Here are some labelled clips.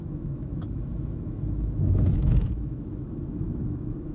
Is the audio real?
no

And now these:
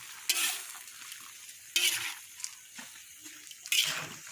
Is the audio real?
yes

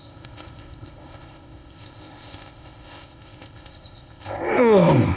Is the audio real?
no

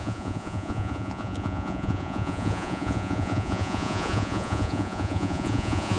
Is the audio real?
no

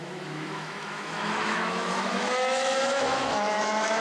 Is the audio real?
no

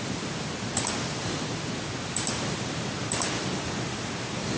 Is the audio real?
no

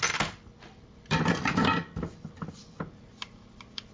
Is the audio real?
yes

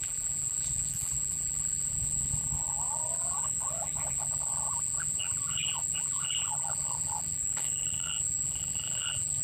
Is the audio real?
no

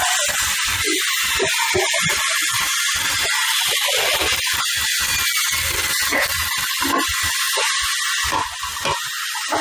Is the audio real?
yes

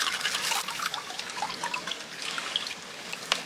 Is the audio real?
no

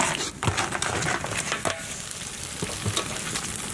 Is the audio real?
yes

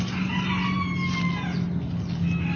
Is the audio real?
yes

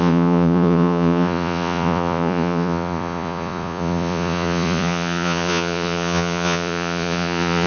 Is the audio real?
no